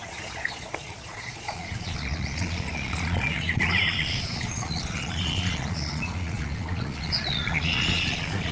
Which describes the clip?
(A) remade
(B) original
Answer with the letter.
A